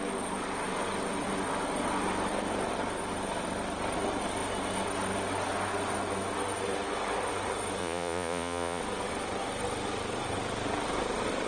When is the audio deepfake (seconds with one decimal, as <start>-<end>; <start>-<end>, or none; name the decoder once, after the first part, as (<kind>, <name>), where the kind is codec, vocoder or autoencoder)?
7.8-8.8 (vocoder, Vocos)